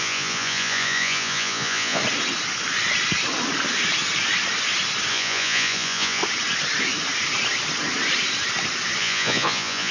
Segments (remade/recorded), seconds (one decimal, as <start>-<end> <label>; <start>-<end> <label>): 0.0-2.0 remade; 2.0-5.1 recorded; 5.1-6.2 remade; 6.2-9.0 recorded; 9.0-9.9 remade